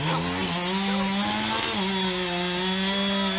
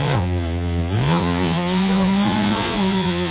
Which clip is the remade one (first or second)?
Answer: second